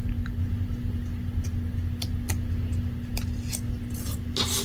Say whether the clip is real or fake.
real